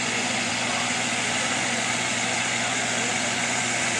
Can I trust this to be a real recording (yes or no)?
no